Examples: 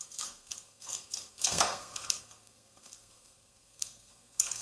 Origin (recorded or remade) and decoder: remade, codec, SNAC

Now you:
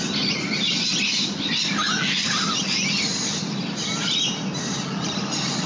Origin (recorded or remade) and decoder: recorded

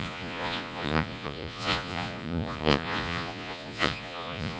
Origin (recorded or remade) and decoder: remade, vocoder, Vocos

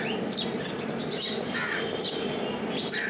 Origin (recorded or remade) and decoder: recorded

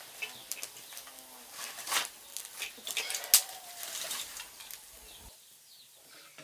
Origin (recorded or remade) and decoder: recorded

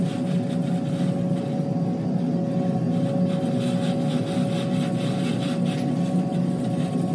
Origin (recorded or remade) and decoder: recorded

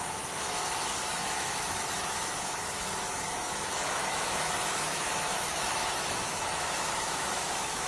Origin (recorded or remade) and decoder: remade, autoencoder, DAC-VAE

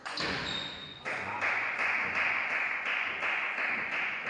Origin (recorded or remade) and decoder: remade, vocoder, Vocos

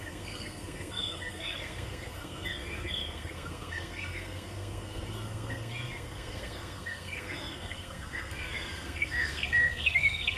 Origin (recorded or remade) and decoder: remade, codec, SNAC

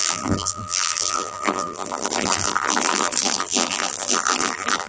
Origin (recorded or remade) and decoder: remade, vocoder, BigVGAN v2